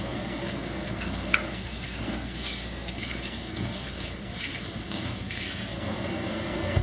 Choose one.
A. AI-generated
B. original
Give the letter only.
A